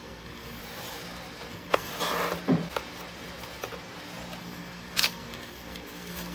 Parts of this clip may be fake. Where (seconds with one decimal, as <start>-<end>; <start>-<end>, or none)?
0.0-0.6; 1.5-1.9; 4.4-6.3